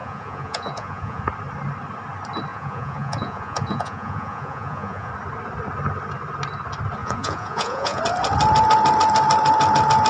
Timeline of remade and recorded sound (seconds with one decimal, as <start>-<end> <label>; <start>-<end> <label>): 0.0-1.2 remade; 1.2-2.5 recorded; 2.5-5.1 remade; 5.1-7.0 recorded; 7.0-8.0 remade; 8.0-10.1 recorded